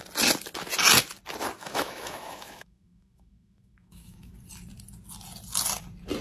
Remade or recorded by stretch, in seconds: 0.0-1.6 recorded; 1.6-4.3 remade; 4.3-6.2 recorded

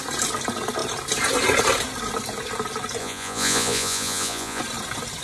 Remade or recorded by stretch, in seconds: 0.0-3.0 recorded; 3.0-4.6 remade; 4.6-5.2 recorded

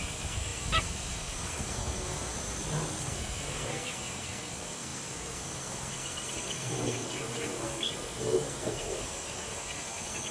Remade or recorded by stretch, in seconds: 0.0-2.3 remade; 2.3-3.0 recorded; 3.0-10.3 remade